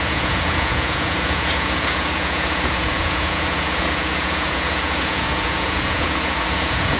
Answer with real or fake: fake